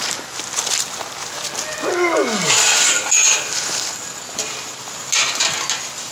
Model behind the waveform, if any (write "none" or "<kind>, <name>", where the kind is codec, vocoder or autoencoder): none